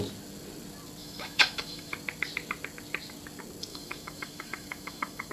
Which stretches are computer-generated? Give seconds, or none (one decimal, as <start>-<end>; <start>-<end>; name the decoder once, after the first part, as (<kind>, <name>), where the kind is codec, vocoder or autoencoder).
1.0-1.9 (autoencoder, DAC-VAE); 3.7-5.3